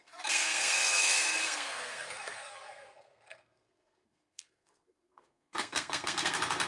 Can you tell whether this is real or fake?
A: fake